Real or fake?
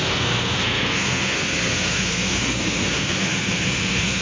fake